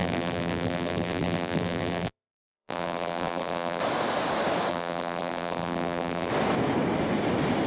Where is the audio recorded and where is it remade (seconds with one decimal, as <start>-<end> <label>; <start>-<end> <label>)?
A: 0.0-3.8 remade; 3.8-4.7 recorded; 4.7-6.3 remade; 6.3-7.7 recorded